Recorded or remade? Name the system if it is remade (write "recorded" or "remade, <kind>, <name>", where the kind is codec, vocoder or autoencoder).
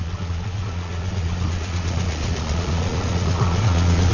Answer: remade, vocoder, Vocos